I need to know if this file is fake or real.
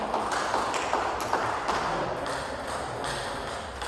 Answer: real